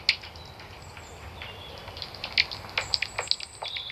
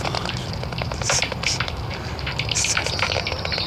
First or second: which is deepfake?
second